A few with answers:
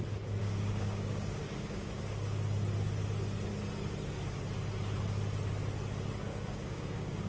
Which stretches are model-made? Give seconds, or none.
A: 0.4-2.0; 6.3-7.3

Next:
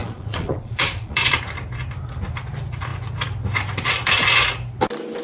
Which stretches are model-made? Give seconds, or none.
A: 0.0-1.4

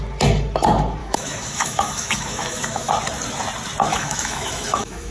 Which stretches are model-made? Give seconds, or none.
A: 1.0-2.9; 3.9-5.1

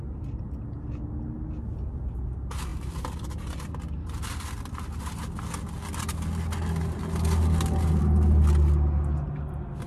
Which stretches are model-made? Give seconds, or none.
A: none